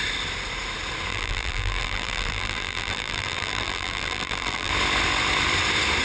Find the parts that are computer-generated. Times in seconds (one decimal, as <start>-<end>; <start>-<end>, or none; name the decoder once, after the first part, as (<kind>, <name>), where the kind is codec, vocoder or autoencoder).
1.1-4.7 (vocoder, BigVGAN v2)